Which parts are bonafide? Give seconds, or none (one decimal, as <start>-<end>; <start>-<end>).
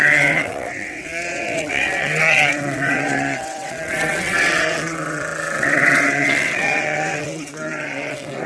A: none